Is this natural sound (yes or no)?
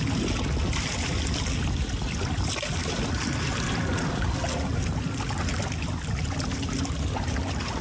yes